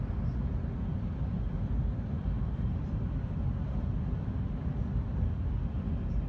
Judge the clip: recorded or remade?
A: recorded